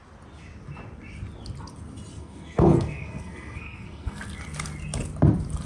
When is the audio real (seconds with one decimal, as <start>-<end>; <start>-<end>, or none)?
0.0-2.1; 4.2-5.7